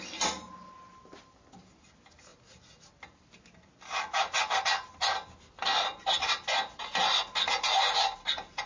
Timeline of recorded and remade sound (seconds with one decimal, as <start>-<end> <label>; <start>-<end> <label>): 0.0-8.7 recorded